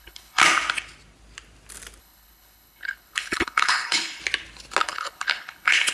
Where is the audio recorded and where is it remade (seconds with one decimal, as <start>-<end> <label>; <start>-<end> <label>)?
0.0-0.4 remade; 0.4-2.0 recorded; 2.0-4.2 remade; 4.2-4.8 recorded; 4.8-5.9 remade